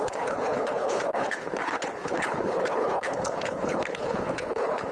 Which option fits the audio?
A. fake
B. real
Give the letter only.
A